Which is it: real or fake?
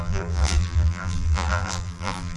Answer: fake